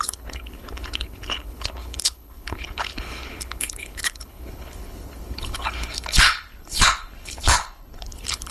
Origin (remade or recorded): remade